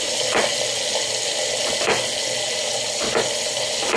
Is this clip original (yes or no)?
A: yes